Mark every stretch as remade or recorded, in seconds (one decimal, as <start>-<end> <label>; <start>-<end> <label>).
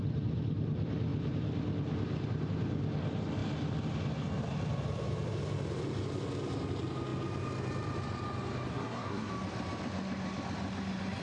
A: 0.0-8.7 recorded; 8.7-9.3 remade; 9.3-11.2 recorded